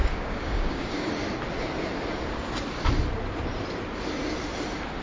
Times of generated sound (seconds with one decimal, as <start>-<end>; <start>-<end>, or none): 0.0-1.1